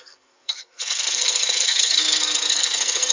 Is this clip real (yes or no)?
no